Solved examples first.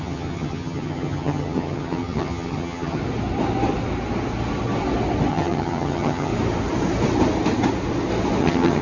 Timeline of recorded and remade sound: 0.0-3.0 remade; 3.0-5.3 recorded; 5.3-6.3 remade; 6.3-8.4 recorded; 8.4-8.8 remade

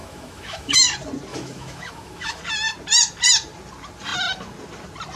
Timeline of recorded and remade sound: 0.0-0.8 remade; 0.8-1.3 recorded; 1.3-2.4 remade; 2.4-5.2 recorded